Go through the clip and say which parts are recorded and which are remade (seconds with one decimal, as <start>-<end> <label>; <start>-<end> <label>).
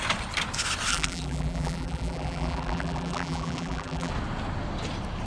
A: 0.0-0.9 recorded; 0.9-4.1 remade; 4.1-5.3 recorded